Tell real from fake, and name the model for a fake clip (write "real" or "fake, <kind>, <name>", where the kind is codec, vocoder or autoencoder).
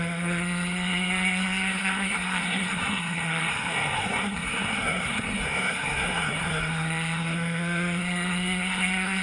fake, codec, SNAC